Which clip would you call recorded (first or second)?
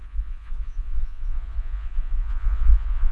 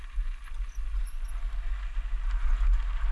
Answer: second